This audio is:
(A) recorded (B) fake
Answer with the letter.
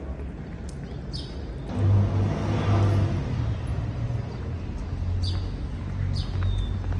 A